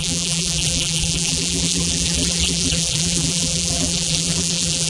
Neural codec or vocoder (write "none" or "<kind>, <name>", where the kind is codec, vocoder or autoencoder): vocoder, BigVGAN v2